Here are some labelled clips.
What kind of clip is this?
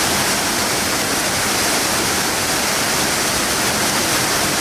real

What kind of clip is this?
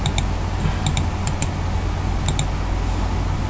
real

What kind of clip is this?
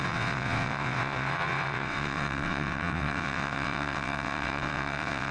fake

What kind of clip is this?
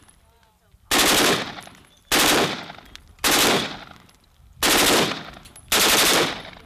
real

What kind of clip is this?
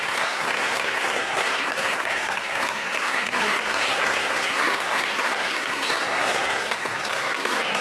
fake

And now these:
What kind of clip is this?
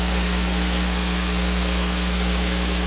fake